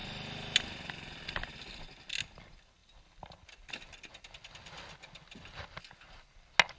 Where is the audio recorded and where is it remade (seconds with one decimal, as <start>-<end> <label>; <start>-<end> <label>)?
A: 0.0-6.8 recorded